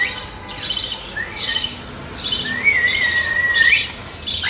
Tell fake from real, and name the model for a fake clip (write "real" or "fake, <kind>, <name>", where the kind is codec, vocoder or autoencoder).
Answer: real